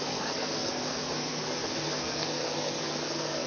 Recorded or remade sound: remade